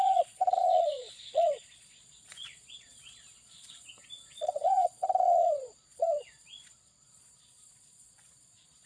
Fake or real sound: fake